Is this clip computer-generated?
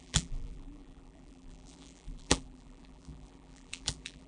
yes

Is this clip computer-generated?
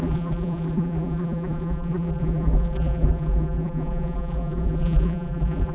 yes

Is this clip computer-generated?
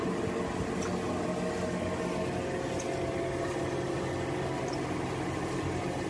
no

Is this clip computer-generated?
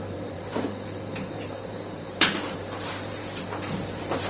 yes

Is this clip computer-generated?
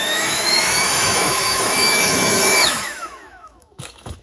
yes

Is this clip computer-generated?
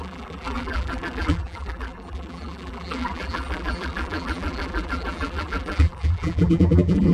yes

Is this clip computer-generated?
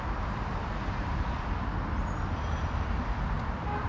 no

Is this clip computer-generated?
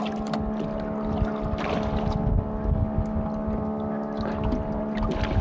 no